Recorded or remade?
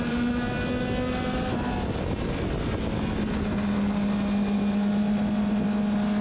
recorded